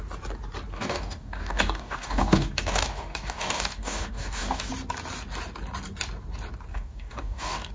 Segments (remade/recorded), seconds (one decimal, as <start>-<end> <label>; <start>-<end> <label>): 0.0-0.7 recorded; 0.7-4.7 remade; 4.7-6.7 recorded; 6.7-7.7 remade